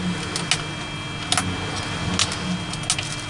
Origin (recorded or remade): recorded